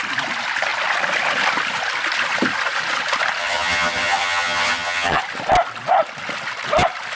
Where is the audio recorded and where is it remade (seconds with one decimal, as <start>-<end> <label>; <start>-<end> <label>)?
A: 0.0-3.4 recorded; 3.4-5.2 remade; 5.2-7.1 recorded